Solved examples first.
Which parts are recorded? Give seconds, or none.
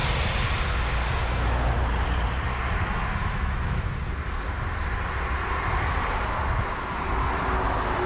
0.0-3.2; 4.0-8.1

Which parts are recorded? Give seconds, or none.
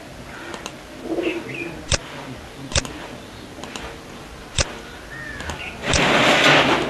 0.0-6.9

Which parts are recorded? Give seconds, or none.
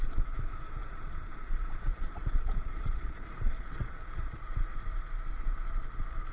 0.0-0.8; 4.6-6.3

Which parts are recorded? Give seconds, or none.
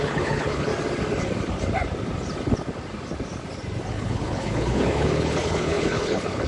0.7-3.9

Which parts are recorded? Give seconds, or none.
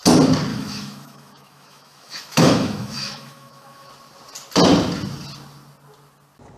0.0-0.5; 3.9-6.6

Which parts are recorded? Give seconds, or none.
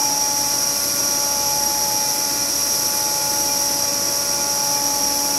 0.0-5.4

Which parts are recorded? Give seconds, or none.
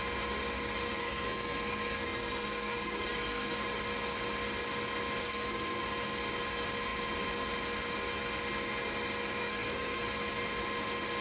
0.0-1.0; 3.6-5.2; 5.8-9.4; 10.0-11.2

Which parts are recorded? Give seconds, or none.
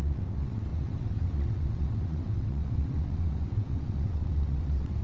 none